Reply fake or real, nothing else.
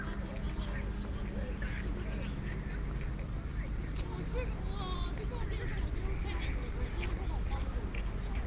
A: real